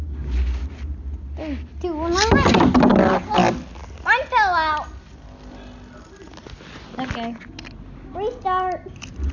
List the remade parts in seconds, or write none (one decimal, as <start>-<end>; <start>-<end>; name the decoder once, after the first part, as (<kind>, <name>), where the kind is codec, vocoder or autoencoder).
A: none

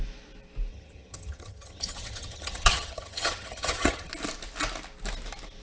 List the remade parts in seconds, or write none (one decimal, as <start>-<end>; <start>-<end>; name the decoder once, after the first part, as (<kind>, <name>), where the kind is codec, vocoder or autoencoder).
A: 0.7-4.1 (vocoder, HiFi-GAN)

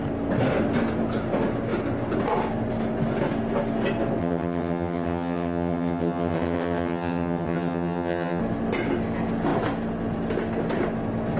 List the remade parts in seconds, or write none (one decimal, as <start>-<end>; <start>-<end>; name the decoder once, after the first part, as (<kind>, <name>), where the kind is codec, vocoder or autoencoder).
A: 4.2-8.4 (vocoder, HiFi-GAN)

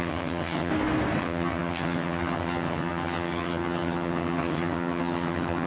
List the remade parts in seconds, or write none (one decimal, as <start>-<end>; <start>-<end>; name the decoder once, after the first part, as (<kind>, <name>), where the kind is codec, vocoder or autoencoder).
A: 0.0-0.7 (vocoder, HiFi-GAN); 1.2-5.7